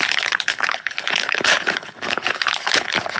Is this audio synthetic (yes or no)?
yes